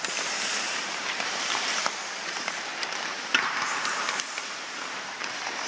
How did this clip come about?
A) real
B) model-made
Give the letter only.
B